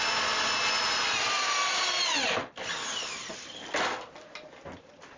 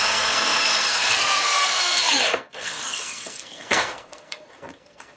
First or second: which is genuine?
first